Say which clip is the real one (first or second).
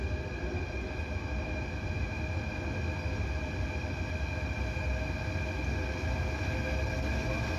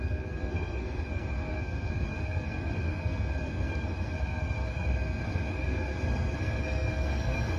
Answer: first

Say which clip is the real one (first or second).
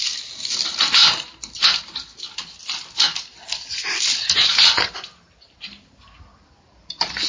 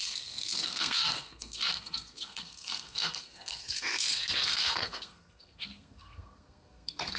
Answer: first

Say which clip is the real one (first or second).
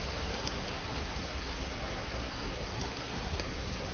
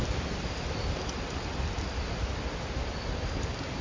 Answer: second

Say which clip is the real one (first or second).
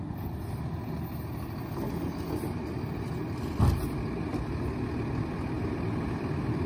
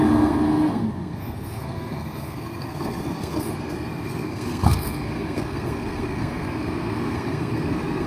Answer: first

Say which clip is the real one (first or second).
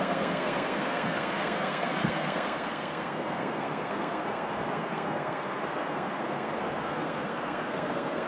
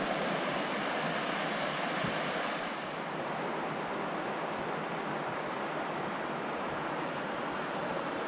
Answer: second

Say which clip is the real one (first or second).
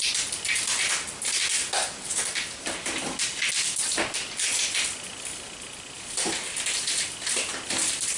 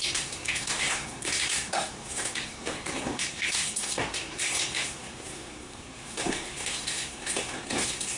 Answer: first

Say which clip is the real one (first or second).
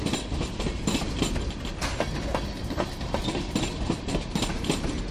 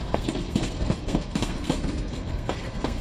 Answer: first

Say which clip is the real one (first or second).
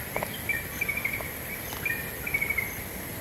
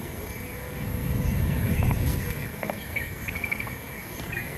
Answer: first